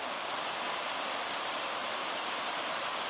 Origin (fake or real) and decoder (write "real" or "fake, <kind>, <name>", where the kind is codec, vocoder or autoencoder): real